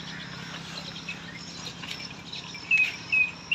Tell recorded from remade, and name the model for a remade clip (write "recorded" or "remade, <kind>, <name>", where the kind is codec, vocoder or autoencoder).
recorded